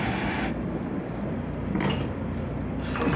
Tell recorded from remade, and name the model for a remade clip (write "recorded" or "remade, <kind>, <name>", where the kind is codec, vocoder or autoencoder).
recorded